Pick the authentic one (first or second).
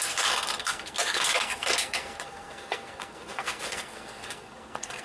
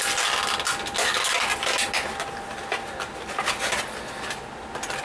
second